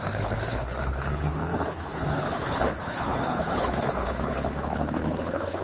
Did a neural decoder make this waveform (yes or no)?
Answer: yes